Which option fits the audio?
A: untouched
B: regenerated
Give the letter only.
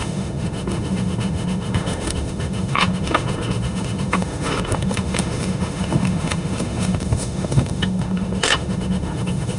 B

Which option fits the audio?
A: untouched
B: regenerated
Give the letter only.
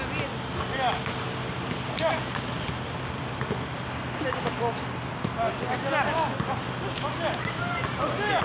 A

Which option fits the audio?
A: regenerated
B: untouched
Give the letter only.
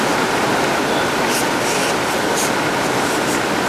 B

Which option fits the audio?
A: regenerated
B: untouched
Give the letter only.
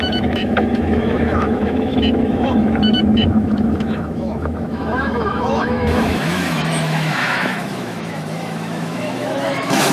A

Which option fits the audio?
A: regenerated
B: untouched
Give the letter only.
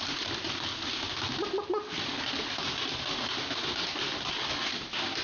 B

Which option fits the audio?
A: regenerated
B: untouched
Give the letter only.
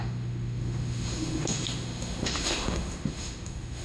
A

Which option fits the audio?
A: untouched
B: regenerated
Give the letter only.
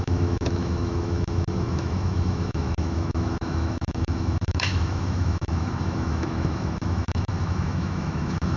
B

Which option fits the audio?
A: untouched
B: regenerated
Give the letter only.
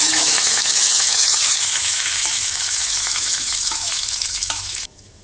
B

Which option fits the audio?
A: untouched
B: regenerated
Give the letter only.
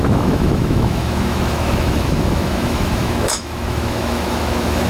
B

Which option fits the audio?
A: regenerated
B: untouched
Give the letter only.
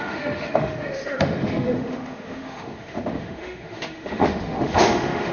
A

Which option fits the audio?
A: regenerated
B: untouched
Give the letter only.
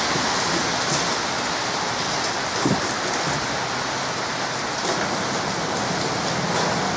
B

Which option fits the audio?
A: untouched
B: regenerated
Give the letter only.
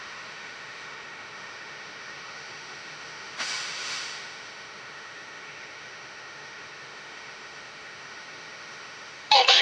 B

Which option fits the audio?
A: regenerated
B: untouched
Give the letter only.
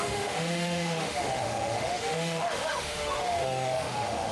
A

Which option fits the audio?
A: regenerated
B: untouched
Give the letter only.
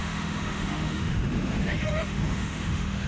A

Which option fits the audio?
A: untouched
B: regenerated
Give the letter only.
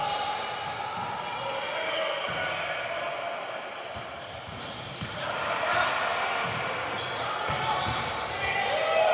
A